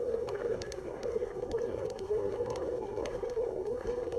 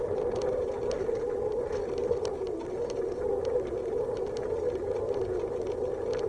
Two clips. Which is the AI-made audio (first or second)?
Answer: first